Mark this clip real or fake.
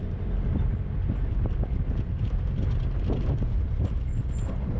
real